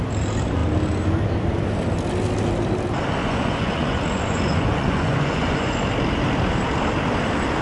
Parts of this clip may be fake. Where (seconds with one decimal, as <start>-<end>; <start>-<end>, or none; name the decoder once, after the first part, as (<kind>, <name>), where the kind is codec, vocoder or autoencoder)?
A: 3.2-5.8 (vocoder, Vocos)